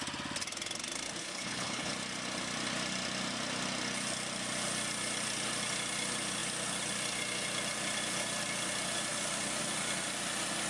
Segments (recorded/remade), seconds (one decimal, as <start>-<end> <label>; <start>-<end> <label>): 0.0-1.2 recorded; 1.2-1.9 remade; 1.9-10.7 recorded